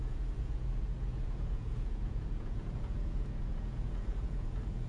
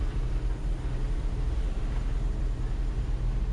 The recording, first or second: second